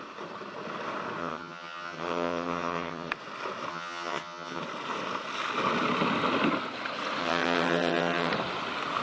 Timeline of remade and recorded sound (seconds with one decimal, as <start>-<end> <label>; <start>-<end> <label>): 0.0-1.2 recorded; 1.2-3.1 remade; 3.1-3.7 recorded; 3.7-4.6 remade; 4.6-7.2 recorded; 7.2-8.3 remade; 8.3-9.0 recorded